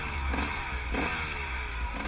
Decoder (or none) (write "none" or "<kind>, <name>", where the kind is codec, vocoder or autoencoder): none